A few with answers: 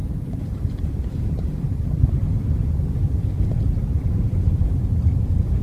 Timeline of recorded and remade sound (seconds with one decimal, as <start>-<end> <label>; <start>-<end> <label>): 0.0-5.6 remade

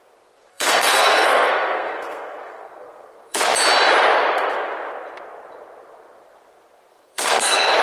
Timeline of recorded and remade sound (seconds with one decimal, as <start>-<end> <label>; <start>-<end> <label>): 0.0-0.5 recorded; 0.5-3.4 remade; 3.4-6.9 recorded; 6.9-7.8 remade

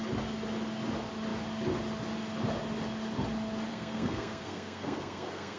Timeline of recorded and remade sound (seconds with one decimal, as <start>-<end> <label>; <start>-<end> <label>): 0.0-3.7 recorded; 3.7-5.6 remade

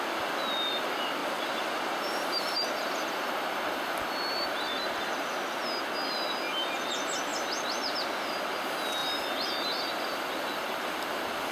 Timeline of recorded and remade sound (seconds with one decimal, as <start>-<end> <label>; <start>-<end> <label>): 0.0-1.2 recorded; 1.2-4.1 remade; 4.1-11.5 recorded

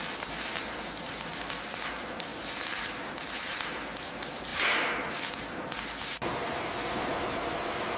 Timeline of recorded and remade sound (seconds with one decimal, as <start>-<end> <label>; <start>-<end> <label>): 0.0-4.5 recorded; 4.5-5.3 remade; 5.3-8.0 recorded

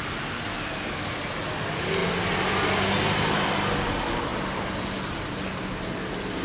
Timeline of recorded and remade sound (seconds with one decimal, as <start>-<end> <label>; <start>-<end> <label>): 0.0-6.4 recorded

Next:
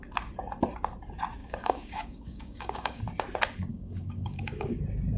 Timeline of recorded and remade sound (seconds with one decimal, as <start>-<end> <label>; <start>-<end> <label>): 0.0-1.4 recorded; 1.4-3.0 remade; 3.0-3.7 recorded; 3.7-4.8 remade; 4.8-5.2 recorded